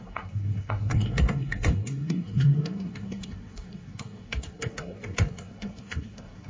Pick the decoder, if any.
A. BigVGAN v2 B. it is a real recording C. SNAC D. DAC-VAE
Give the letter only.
C